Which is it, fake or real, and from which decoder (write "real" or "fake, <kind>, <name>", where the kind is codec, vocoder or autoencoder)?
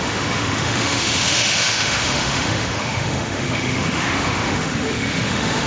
fake, autoencoder, DAC-VAE